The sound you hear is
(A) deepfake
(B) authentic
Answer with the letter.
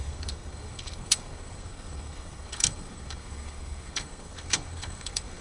A